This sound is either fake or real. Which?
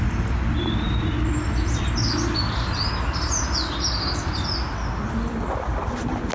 real